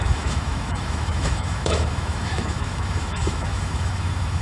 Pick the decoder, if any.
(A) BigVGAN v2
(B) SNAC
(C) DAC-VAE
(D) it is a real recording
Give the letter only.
C